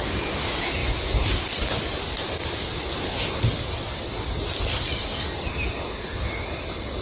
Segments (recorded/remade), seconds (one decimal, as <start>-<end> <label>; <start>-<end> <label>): 0.0-7.0 recorded